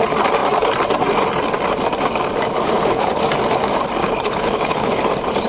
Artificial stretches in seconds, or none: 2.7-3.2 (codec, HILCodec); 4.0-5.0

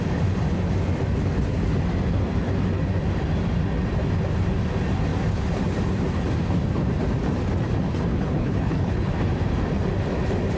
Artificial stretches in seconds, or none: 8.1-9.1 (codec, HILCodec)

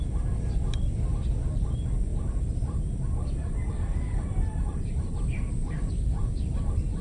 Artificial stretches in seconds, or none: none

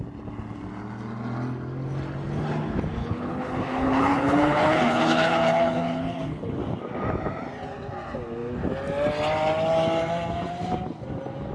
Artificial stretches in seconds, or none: 3.0-6.6 (codec, HILCodec)

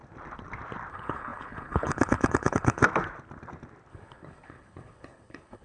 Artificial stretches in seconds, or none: 0.9-2.8 (codec, HILCodec); 3.9-5.6